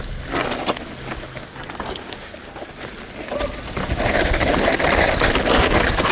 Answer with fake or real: real